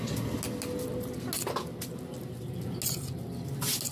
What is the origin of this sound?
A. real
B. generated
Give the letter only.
A